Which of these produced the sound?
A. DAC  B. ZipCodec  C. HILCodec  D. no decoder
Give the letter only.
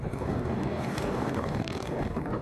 A